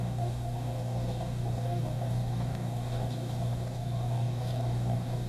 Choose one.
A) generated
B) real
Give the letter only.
A